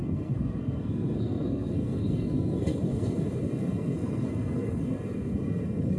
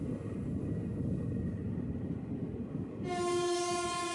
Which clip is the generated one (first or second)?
first